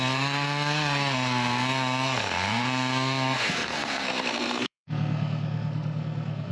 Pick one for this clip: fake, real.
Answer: fake